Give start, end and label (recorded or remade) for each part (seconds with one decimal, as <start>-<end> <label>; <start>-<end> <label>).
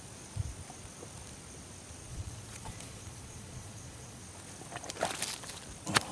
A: 0.0-2.1 recorded; 2.1-4.2 remade; 4.2-6.1 recorded